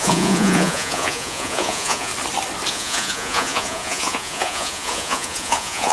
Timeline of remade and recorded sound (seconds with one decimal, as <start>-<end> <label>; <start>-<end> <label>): 0.0-2.1 remade; 2.1-2.7 recorded; 2.7-5.9 remade